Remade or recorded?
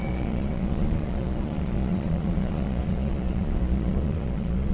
remade